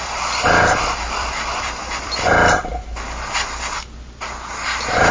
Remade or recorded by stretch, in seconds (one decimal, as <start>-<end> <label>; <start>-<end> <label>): 0.0-2.7 remade; 2.7-4.5 recorded; 4.5-5.1 remade